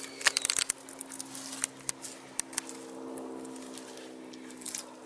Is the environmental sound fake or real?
real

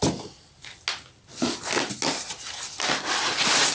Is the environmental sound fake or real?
real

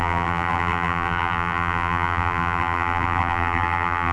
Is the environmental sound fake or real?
fake